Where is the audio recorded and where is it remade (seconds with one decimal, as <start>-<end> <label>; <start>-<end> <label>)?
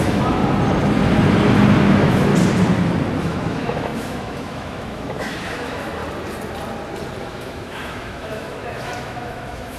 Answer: 0.0-0.4 remade; 0.4-1.8 recorded; 1.8-2.3 remade; 2.3-3.2 recorded; 3.2-6.0 remade; 6.0-7.2 recorded; 7.2-9.8 remade